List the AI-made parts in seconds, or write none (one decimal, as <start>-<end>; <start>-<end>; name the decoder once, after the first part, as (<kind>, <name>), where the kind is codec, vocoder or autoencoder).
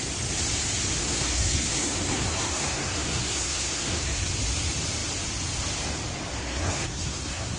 1.0-4.3 (codec, SNAC); 6.4-7.6